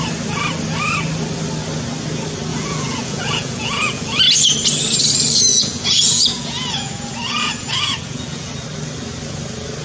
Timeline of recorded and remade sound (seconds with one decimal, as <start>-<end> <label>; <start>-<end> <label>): 0.0-2.5 recorded; 2.5-4.2 remade; 4.2-5.5 recorded; 5.5-8.5 remade; 8.5-9.8 recorded